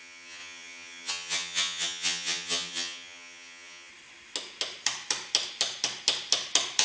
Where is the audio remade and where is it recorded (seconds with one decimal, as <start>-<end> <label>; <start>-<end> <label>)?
0.0-3.9 remade; 3.9-6.8 recorded